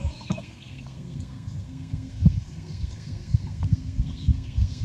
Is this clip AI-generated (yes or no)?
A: yes